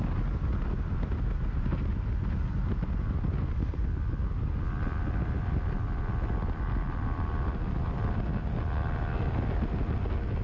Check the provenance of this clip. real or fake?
real